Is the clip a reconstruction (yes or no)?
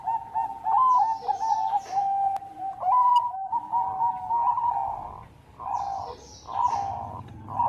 no